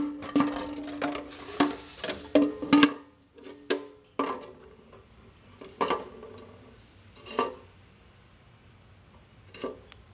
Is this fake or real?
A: real